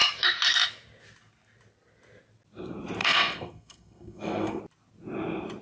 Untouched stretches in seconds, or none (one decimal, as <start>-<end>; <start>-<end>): 0.0-3.0; 4.6-5.6